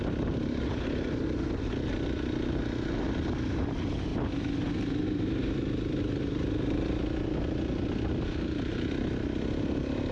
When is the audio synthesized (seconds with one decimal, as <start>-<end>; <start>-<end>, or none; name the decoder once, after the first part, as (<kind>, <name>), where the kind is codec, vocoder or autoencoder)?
none